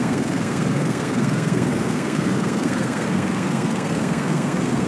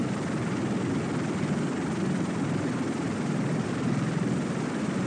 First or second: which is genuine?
second